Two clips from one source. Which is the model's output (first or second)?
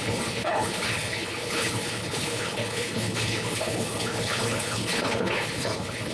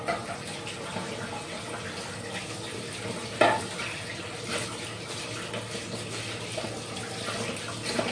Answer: first